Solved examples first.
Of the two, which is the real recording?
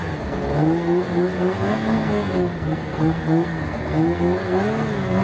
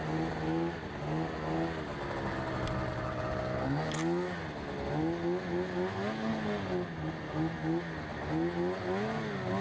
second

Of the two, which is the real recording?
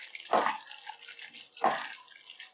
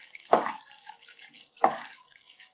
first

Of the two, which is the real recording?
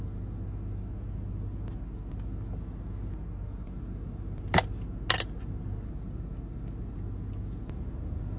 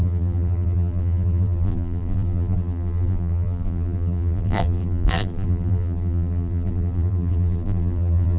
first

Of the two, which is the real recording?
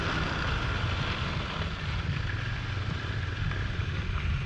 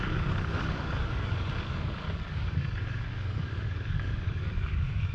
first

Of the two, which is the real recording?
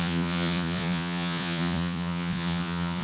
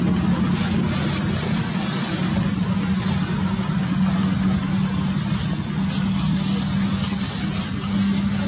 second